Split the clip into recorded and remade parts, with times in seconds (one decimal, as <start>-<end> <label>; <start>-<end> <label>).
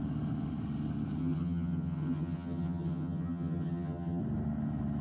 0.0-1.2 recorded; 1.2-4.2 remade; 4.2-5.0 recorded